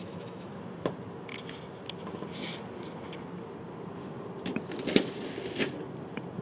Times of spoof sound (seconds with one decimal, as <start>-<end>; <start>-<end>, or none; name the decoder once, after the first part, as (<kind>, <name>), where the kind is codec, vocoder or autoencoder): 0.0-0.6 (autoencoder, DAC-VAE)